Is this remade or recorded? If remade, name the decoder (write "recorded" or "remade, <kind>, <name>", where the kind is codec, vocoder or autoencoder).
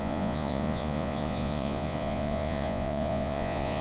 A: remade, vocoder, Vocos